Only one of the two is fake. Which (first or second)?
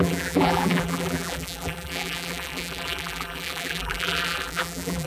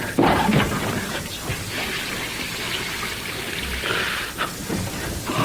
first